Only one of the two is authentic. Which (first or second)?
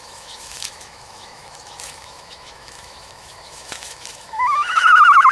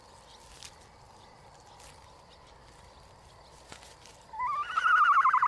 second